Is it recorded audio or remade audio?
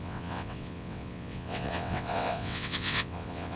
remade